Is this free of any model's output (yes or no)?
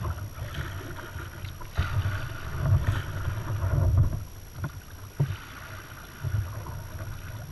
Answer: yes